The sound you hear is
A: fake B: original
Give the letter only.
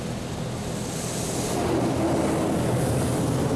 B